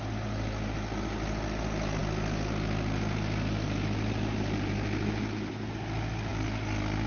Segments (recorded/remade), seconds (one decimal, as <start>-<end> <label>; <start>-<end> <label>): 0.0-7.1 recorded